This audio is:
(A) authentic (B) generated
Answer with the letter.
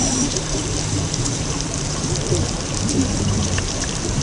B